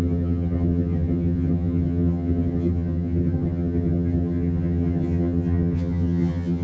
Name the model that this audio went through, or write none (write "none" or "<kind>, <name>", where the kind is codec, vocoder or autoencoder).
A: vocoder, HiFi-GAN